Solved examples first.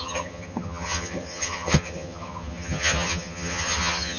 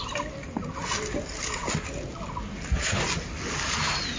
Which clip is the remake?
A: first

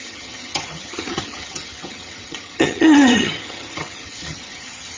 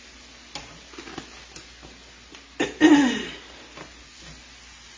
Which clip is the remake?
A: first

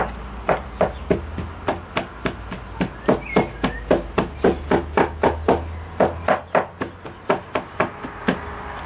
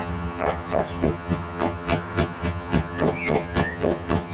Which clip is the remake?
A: second